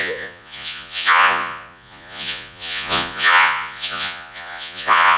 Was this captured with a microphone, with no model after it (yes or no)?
no